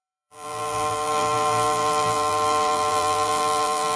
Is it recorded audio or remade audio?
remade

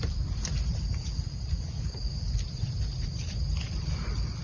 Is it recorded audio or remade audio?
recorded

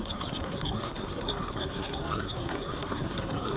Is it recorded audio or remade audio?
remade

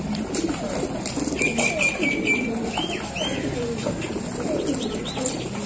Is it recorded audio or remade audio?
recorded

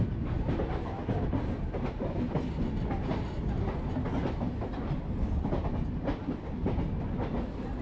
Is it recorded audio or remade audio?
recorded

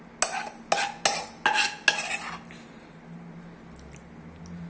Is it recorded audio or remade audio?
recorded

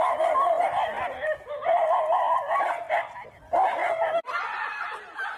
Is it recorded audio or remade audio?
recorded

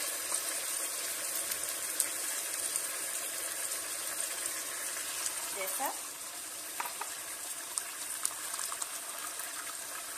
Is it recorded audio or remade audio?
recorded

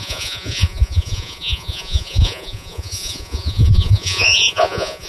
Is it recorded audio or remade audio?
remade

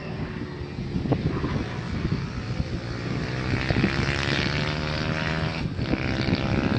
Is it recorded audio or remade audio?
recorded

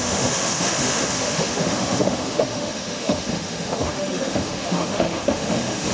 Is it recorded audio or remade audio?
remade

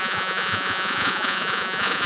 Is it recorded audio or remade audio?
remade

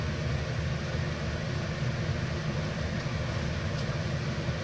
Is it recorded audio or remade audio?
recorded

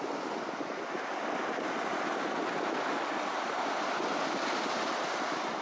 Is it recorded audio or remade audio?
recorded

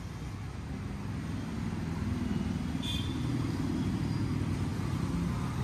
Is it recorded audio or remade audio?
recorded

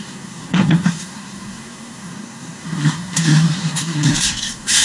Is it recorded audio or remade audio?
remade